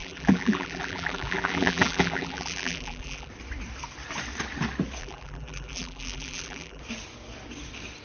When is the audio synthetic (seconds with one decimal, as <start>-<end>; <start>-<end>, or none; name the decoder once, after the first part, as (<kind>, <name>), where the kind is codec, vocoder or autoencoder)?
0.0-3.3 (vocoder, BigVGAN v2); 5.0-6.8